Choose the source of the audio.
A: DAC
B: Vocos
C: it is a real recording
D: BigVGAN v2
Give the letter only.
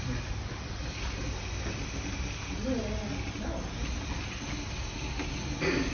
C